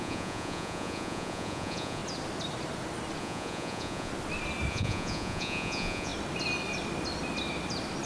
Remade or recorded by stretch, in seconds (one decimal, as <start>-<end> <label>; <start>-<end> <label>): 0.0-2.0 remade; 2.0-3.2 recorded; 3.2-4.1 remade; 4.1-4.7 recorded; 4.7-6.1 remade; 6.1-8.1 recorded